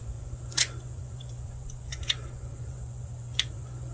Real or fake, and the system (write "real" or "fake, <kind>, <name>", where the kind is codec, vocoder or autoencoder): fake, vocoder, Vocos